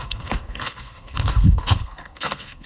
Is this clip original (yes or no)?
no